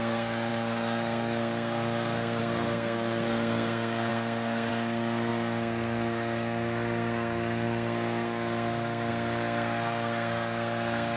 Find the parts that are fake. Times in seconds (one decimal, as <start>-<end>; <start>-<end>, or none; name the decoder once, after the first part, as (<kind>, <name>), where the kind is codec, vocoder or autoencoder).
0.0-11.2 (codec, SNAC)